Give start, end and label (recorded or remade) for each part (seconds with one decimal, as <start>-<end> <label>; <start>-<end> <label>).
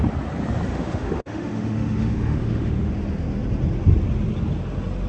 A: 0.0-0.7 recorded; 0.7-2.9 remade; 2.9-5.1 recorded